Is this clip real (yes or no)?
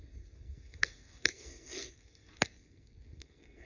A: no